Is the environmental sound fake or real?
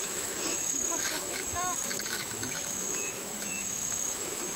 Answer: fake